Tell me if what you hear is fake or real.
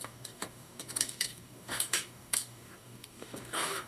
fake